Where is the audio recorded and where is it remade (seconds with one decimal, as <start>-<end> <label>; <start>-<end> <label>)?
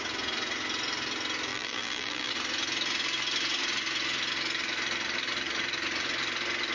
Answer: 0.0-1.5 recorded; 1.5-2.3 remade; 2.3-6.7 recorded